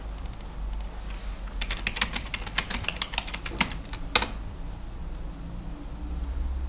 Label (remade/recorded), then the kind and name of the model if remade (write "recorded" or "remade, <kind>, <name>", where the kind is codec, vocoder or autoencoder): recorded